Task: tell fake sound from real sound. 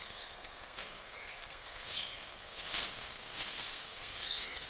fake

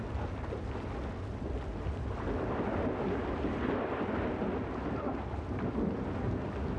real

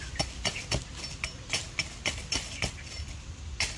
real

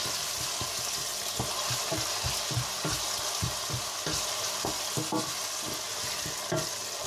real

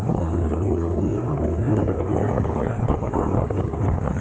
fake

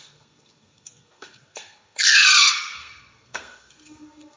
fake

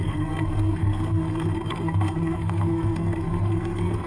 fake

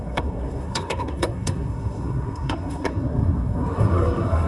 fake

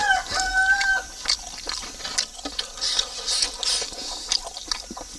real